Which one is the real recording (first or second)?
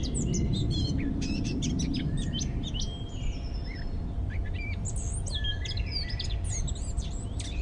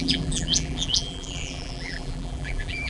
first